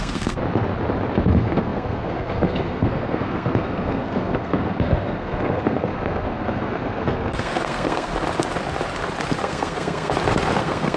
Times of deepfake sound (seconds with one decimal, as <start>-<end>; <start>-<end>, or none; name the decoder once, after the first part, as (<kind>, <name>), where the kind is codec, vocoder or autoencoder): 0.0-0.4 (codec, SNAC); 1.2-8.1; 9.4-10.1; 10.6-11.0